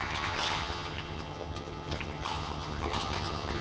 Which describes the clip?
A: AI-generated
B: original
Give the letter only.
A